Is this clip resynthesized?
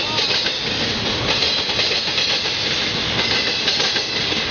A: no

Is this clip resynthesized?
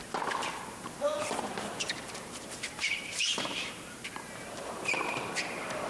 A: yes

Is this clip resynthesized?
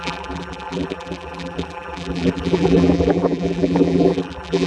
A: yes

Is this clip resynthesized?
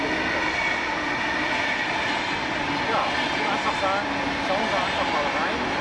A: no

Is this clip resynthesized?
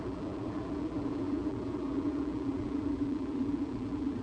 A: yes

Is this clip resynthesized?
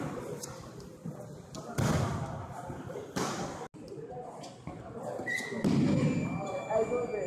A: no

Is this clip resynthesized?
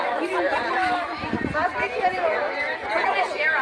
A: yes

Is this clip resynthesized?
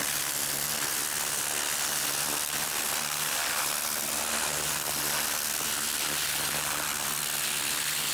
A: no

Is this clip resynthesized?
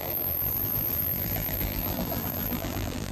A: yes